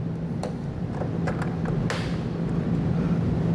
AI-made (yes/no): no